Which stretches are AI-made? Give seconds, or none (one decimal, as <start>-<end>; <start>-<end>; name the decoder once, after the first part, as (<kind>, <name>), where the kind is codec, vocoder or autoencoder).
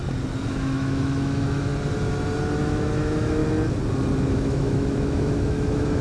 0.5-1.7 (autoencoder, DAC-VAE); 2.6-3.4; 4.2-6.0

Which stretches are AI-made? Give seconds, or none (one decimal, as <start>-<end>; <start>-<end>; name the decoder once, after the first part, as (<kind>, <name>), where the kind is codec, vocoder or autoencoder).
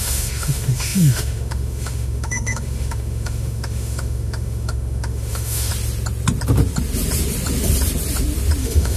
0.0-5.7 (autoencoder, DAC-VAE); 8.6-9.0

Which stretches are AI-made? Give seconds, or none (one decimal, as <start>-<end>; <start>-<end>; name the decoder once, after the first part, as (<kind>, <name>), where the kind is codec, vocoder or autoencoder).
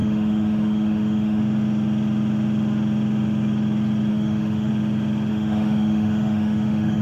0.0-1.4 (autoencoder, DAC-VAE); 4.1-4.7; 5.3-7.0